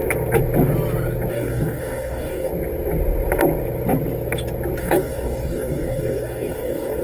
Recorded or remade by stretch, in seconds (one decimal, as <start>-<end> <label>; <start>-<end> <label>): 0.0-1.3 recorded; 1.3-2.5 remade; 2.5-4.8 recorded; 4.8-7.0 remade

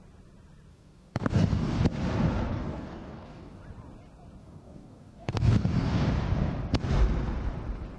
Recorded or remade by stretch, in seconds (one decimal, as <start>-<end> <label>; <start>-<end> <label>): 0.0-0.7 recorded; 0.7-1.8 remade; 1.8-2.5 recorded; 2.5-3.6 remade; 3.6-4.4 recorded; 4.4-6.1 remade; 6.1-8.0 recorded

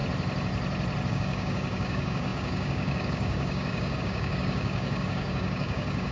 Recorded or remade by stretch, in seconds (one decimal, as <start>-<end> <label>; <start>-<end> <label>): 0.0-1.1 recorded; 1.1-6.1 remade